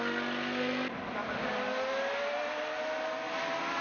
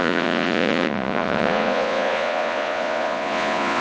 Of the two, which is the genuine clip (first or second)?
first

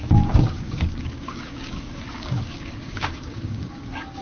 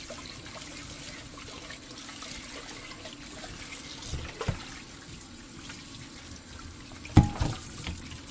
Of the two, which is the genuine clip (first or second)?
second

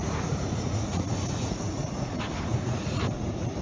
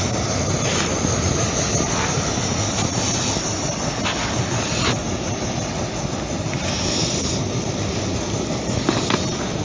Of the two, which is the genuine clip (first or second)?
second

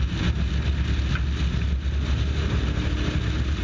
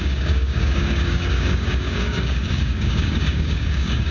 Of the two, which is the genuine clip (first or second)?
first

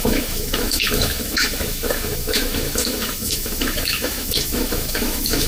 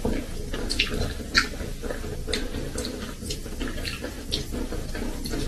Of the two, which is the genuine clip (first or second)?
second